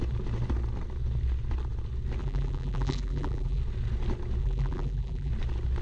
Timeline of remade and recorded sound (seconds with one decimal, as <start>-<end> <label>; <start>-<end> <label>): 0.0-2.2 recorded; 2.2-3.6 remade; 3.6-4.4 recorded; 4.4-5.3 remade; 5.3-5.8 recorded